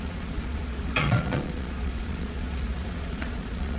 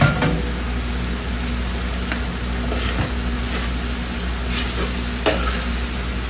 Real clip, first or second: second